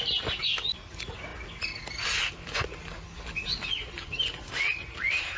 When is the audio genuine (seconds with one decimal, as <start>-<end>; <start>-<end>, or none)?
0.0-5.4